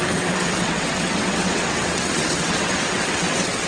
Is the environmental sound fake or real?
fake